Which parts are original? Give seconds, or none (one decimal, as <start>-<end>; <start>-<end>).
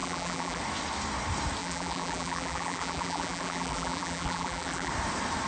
0.6-1.6; 4.9-5.5